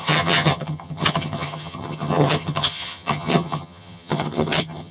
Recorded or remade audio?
remade